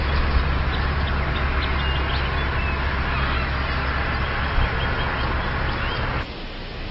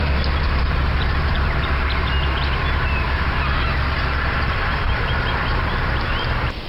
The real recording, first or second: first